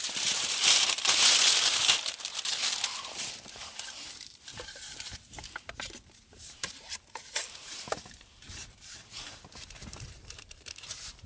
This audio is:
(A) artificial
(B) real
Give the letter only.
A